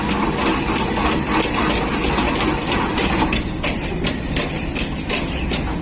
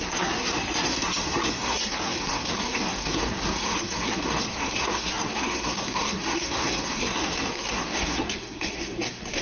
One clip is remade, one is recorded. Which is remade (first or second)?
second